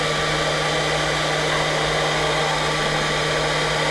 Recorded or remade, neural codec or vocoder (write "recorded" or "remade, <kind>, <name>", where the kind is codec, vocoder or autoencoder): recorded